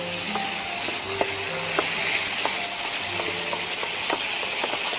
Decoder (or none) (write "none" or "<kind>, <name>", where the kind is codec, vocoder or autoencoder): none